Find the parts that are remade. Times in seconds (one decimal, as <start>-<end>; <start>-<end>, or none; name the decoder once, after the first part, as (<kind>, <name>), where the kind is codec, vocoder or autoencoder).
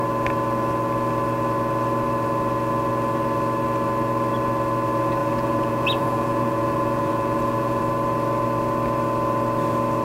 5.2-7.8 (vocoder, Vocos)